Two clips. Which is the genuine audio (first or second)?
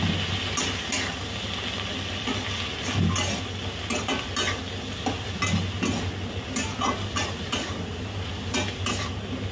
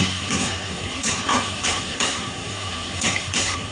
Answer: first